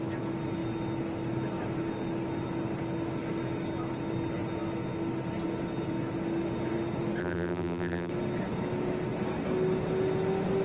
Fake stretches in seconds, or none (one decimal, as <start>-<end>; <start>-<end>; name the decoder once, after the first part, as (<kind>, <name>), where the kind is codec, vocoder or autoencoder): 7.2-8.1 (vocoder, BigVGAN v2)